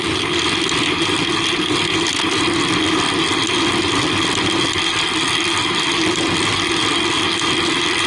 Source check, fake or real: real